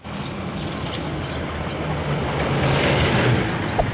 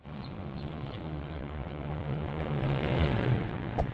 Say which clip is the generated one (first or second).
second